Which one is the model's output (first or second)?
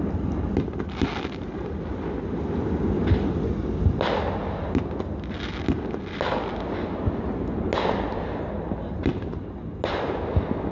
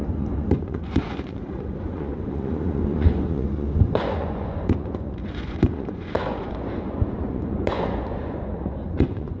second